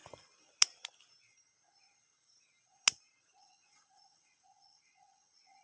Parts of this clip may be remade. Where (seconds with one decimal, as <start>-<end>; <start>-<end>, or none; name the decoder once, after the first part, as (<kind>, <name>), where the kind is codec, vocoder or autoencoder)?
3.4-5.6 (vocoder, Vocos)